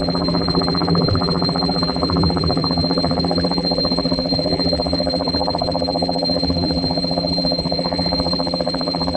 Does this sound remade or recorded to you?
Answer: remade